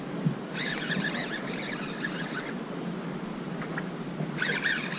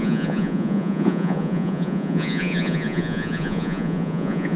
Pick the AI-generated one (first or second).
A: second